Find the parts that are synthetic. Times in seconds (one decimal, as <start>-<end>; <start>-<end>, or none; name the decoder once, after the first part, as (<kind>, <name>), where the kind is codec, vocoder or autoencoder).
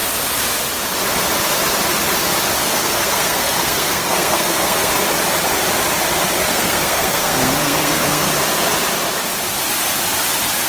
2.6-4.9 (codec, SNAC); 6.5-8.3